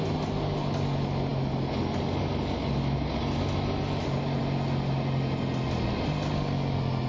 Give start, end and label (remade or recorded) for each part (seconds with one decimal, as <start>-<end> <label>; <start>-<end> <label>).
0.0-7.1 recorded